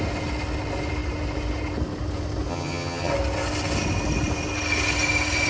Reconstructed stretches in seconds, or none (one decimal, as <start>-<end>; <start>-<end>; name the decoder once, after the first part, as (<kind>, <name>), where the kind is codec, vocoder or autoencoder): 2.5-3.1 (vocoder, HiFi-GAN)